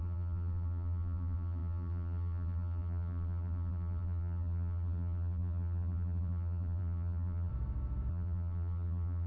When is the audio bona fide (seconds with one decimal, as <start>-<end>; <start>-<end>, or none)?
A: 7.5-8.1